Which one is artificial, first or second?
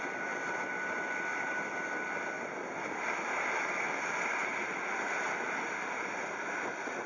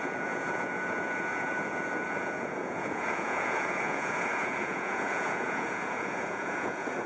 second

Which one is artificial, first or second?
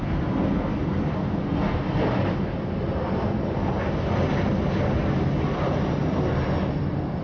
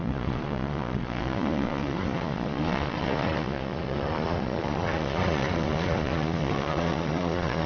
second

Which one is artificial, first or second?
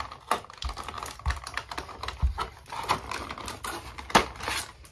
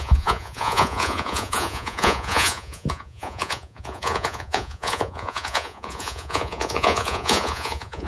second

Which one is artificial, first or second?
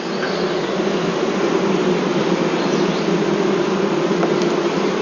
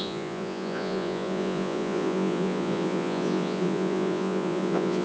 second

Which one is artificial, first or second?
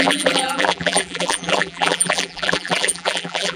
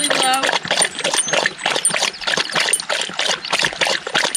first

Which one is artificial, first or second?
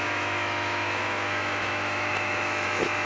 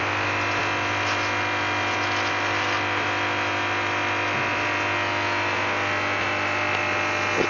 first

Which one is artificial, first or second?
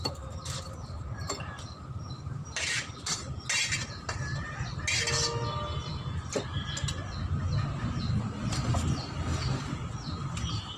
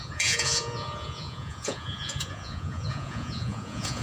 second